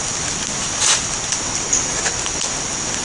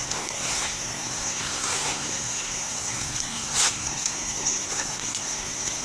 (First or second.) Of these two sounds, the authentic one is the first